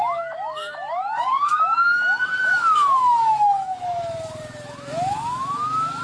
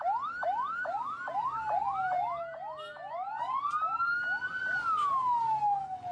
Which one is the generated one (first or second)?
first